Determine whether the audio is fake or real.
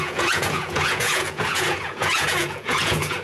fake